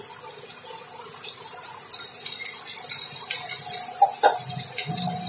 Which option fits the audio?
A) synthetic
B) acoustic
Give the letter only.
B